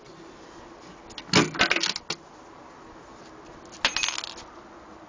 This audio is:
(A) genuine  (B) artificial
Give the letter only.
A